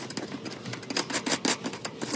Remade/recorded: recorded